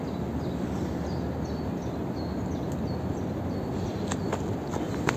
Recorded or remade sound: recorded